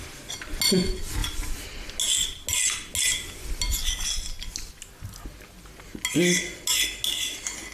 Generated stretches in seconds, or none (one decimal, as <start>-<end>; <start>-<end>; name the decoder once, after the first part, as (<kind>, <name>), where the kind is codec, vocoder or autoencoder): none